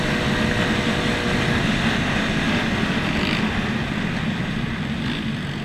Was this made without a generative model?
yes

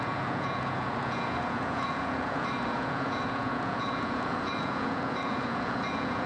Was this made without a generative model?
no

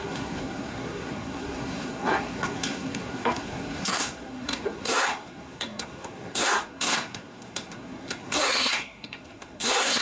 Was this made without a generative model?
no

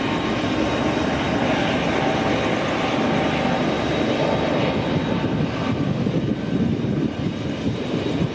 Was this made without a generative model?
yes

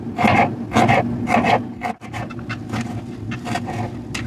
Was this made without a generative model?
yes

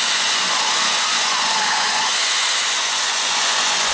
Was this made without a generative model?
no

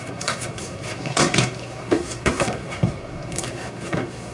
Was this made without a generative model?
no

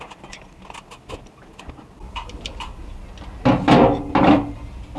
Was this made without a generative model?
yes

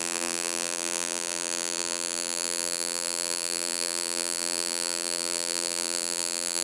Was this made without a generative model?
no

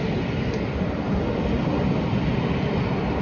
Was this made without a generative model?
yes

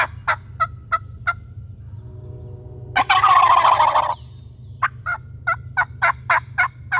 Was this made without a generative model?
yes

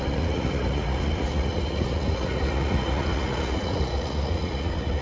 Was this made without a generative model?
no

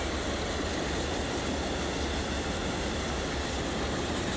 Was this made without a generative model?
yes